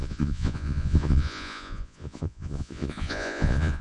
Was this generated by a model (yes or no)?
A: yes